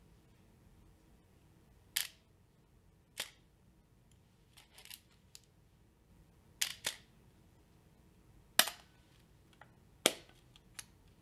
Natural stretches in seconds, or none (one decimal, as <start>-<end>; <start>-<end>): 0.0-11.2